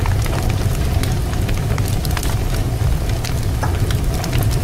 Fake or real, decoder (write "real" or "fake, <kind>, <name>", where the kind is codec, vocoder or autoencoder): real